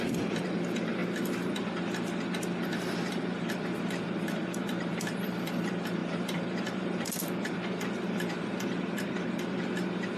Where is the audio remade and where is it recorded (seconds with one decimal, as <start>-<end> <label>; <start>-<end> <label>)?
0.0-1.0 remade; 1.0-2.8 recorded; 2.8-10.2 remade